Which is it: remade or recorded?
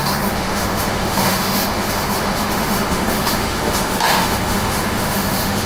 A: remade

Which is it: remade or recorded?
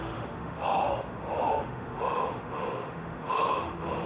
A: remade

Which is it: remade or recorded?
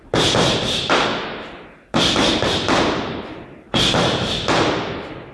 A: recorded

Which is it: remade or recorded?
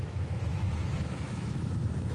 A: remade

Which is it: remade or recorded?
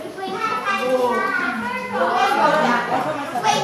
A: recorded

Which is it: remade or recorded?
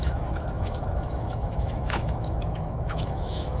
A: remade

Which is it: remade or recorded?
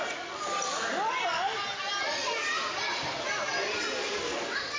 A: recorded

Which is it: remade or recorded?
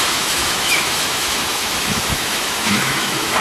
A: remade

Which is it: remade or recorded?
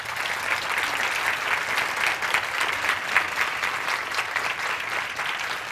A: recorded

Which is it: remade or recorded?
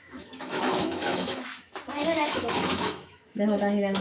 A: remade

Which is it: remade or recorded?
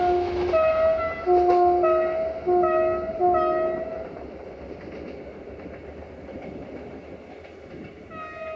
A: recorded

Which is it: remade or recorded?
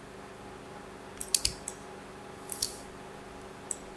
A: recorded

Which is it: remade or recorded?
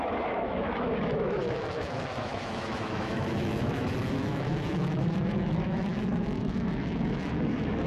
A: remade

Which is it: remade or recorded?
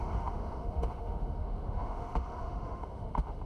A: remade